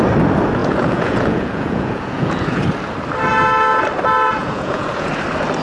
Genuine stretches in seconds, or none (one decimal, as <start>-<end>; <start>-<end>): 0.0-0.6; 2.6-4.4; 5.1-5.6